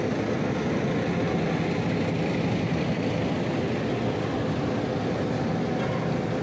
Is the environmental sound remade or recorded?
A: recorded